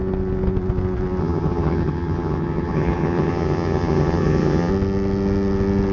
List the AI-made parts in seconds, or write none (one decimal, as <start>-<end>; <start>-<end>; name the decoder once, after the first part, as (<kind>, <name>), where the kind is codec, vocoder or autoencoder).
1.2-4.7 (vocoder, HiFi-GAN)